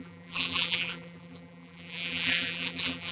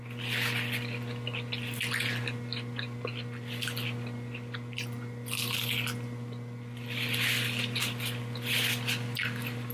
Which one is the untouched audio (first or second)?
second